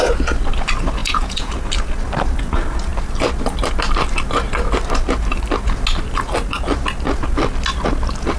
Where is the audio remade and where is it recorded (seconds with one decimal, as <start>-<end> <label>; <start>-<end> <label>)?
0.0-1.0 recorded; 1.0-1.5 remade; 1.5-8.4 recorded